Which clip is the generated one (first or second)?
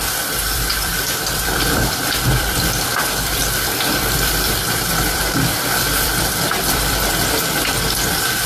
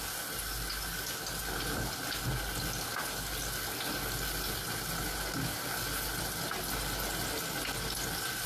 first